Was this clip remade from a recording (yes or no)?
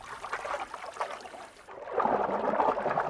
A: no